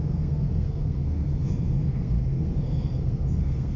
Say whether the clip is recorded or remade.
remade